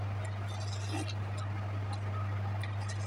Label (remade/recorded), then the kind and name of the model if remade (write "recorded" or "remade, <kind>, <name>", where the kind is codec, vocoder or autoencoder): recorded